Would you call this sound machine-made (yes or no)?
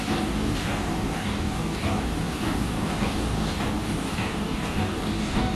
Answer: yes